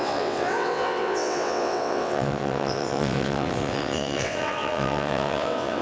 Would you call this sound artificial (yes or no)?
yes